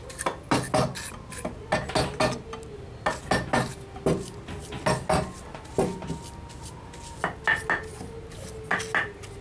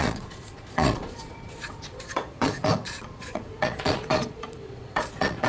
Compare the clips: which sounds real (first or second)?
first